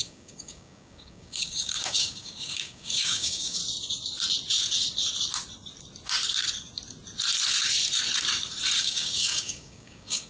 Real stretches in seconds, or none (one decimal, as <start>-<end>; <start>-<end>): 3.6-8.8